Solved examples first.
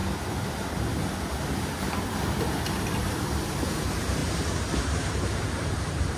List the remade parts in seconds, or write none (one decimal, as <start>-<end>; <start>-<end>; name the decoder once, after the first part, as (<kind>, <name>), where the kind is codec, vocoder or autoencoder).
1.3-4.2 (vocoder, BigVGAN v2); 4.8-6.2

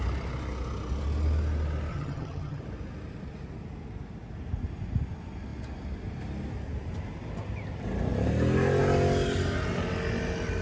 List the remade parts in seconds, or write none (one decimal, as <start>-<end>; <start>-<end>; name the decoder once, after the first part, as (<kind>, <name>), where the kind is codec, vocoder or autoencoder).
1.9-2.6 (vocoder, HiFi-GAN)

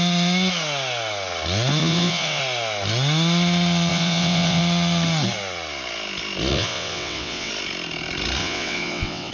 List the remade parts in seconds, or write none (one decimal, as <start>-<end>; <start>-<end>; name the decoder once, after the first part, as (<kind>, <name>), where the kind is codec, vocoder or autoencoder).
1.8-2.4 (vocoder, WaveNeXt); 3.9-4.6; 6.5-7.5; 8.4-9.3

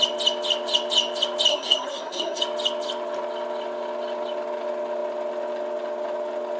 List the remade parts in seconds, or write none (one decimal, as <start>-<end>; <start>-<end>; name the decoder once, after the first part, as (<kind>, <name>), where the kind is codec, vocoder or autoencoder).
1.5-2.4 (codec, SNAC)

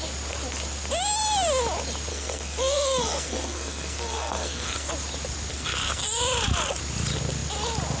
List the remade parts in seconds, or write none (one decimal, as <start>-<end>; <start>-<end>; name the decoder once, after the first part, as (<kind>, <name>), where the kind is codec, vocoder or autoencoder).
2.1-4.9 (codec, SNAC); 5.5-6.2